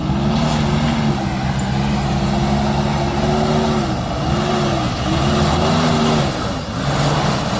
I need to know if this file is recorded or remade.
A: recorded